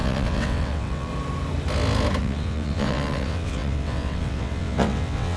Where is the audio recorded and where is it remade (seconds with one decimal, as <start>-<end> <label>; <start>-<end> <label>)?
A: 0.0-1.1 remade; 1.1-2.2 recorded; 2.2-5.4 remade

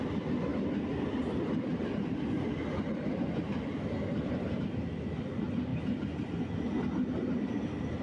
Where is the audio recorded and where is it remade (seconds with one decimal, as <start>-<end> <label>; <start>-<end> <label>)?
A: 0.0-8.0 recorded

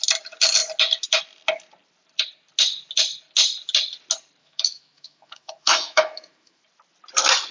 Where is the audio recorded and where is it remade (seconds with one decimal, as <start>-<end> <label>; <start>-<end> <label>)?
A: 0.0-4.4 recorded; 4.4-6.6 remade; 6.6-7.5 recorded

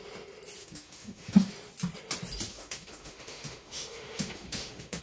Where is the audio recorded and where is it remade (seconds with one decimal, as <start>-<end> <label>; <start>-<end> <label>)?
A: 0.0-0.6 recorded; 0.6-1.5 remade; 1.5-2.5 recorded; 2.5-5.0 remade

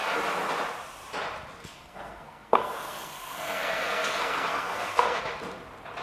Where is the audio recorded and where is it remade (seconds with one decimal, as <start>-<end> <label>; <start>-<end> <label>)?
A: 0.0-1.6 recorded; 1.6-5.2 remade; 5.2-6.0 recorded